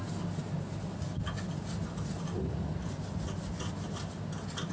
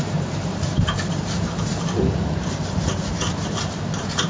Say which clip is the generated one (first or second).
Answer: second